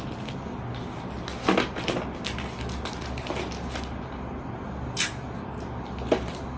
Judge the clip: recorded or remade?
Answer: recorded